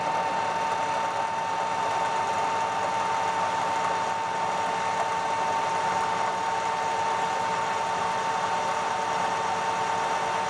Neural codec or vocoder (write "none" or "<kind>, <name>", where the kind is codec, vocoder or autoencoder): none